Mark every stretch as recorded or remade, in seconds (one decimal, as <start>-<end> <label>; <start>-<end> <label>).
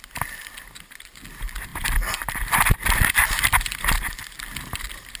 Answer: 0.0-5.2 recorded